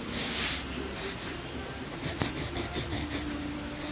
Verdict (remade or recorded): remade